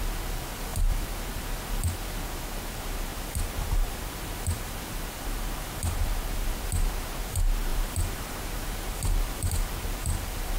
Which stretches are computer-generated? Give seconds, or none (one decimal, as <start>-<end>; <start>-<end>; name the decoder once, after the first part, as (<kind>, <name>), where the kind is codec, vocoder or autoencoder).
0.7-1.7 (vocoder, BigVGAN v2); 3.1-6.6; 7.7-10.6